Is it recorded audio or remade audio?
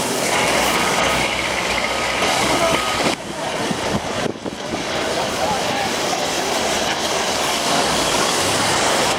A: remade